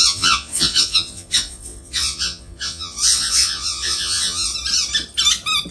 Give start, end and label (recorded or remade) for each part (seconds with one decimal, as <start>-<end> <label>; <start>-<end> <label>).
0.0-4.5 remade; 4.5-5.7 recorded